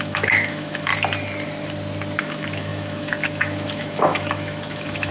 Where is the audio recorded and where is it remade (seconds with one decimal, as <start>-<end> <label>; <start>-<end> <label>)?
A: 0.0-0.9 remade; 0.9-2.2 recorded; 2.2-5.1 remade